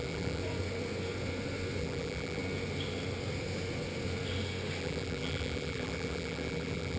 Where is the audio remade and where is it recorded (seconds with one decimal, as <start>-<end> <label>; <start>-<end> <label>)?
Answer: 0.0-0.4 remade; 0.4-1.8 recorded; 1.8-2.4 remade; 2.4-4.8 recorded; 4.8-7.0 remade